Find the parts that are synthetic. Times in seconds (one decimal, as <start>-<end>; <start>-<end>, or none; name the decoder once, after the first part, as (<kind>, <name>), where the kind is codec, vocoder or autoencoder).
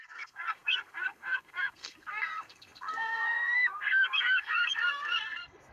0.0-5.7 (codec, SNAC)